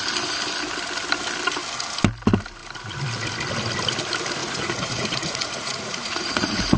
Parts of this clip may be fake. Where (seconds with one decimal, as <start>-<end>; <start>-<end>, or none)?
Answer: 4.4-6.8